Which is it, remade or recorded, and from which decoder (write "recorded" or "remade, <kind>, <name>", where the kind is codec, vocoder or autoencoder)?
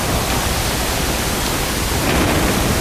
recorded